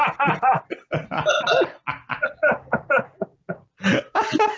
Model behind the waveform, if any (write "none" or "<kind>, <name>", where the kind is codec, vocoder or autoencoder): none